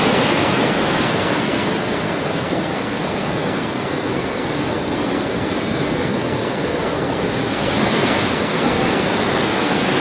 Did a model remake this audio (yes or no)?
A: yes